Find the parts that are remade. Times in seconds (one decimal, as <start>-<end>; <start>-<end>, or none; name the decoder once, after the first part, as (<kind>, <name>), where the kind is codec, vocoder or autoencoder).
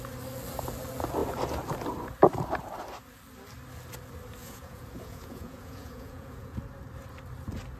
4.4-6.6 (vocoder, Vocos)